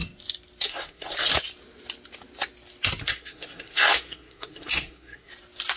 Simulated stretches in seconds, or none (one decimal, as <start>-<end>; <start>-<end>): 0.7-1.3; 3.0-5.3